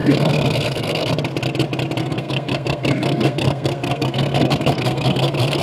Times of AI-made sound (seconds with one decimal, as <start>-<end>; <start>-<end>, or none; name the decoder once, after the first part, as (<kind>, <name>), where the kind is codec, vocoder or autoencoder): 0.0-1.1 (codec, SNAC); 2.0-5.6